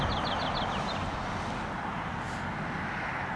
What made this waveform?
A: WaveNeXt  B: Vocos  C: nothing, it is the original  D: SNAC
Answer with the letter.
C